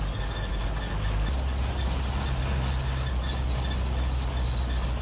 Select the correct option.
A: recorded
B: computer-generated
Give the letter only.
A